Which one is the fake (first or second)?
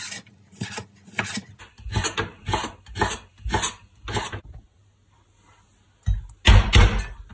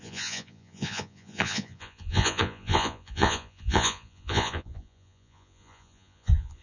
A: second